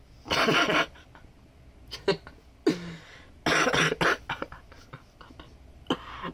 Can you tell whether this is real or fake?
real